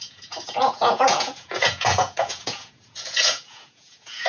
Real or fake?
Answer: fake